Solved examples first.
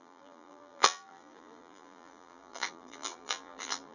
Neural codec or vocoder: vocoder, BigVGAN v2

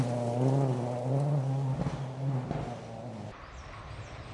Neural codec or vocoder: none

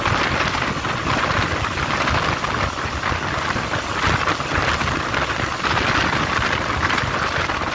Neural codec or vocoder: none